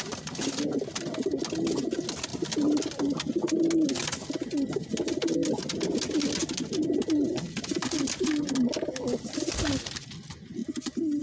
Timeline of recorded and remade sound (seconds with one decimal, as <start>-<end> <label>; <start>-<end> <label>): 0.0-11.2 recorded